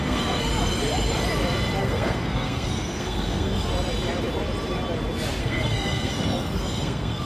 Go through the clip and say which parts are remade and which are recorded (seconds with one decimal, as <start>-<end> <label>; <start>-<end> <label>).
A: 0.0-0.5 remade; 0.5-1.8 recorded; 1.8-3.7 remade; 3.7-5.4 recorded; 5.4-7.3 remade